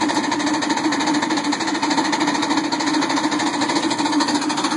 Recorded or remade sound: recorded